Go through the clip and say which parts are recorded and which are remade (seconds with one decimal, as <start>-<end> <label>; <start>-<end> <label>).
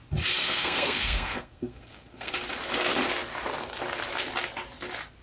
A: 0.0-0.4 recorded; 0.4-2.3 remade; 2.3-5.2 recorded